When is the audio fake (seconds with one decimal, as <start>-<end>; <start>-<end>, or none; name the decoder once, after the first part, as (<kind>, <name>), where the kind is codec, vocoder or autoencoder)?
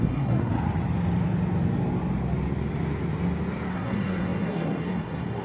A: 0.0-0.5 (codec, SNAC); 3.7-5.4